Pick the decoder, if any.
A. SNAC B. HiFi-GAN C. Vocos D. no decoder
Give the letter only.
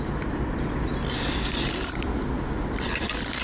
D